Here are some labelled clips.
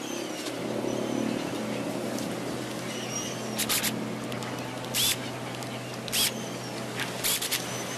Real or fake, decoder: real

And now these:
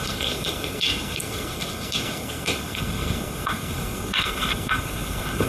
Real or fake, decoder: fake, codec, SNAC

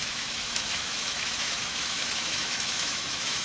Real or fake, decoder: fake, autoencoder, DAC-VAE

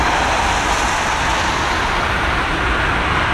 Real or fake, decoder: real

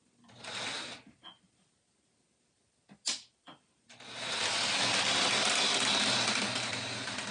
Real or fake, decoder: real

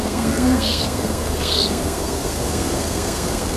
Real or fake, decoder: fake, codec, SNAC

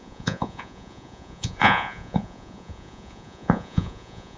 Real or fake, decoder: fake, vocoder, Vocos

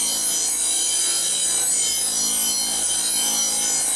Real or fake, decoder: real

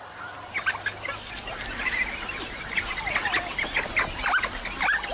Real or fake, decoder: real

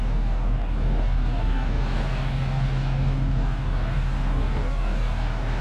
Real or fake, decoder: fake, codec, DAC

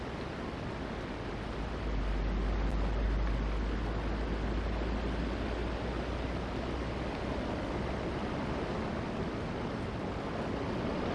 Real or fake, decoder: real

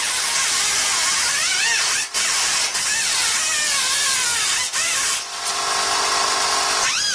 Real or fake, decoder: real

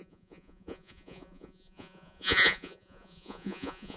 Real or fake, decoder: fake, vocoder, Vocos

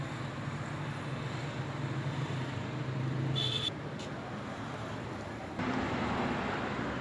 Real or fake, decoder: real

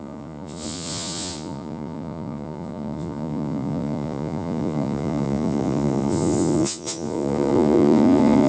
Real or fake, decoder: fake, vocoder, Vocos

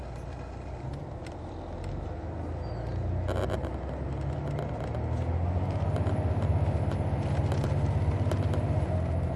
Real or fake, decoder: real